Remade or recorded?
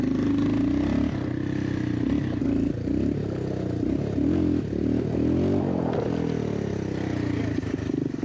recorded